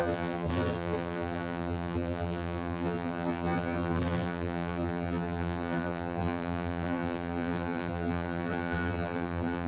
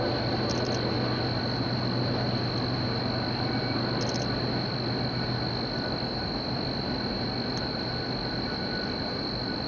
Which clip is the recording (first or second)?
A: second